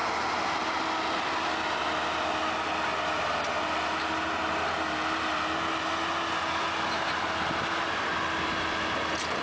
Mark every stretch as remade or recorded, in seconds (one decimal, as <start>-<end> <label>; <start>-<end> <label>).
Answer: 0.0-9.4 recorded